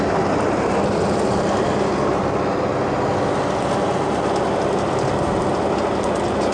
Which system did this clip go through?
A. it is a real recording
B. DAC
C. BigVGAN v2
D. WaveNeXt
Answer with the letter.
A